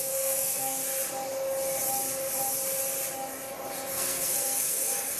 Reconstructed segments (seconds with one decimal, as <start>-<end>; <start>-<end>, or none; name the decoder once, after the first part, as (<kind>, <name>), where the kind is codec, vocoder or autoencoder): 0.0-0.8 (codec, SNAC); 3.9-5.2